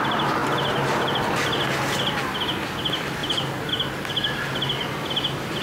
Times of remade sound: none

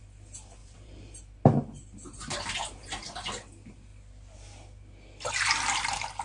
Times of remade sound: 0.6-1.2 (vocoder, BigVGAN v2)

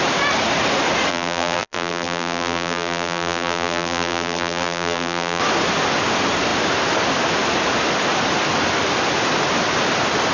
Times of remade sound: 1.1-5.4 (vocoder, BigVGAN v2)

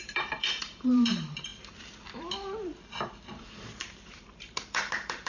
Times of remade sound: 0.0-5.3 (vocoder, BigVGAN v2)

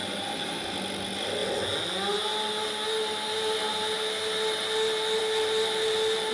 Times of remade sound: 0.0-0.6 (vocoder, BigVGAN v2)